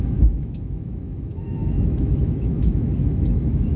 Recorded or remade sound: remade